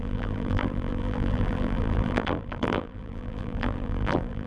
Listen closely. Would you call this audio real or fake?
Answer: fake